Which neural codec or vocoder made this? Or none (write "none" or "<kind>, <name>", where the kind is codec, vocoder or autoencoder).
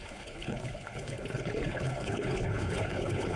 codec, HILCodec